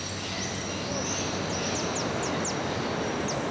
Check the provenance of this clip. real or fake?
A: real